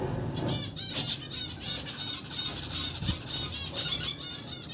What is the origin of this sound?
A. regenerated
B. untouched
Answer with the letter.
B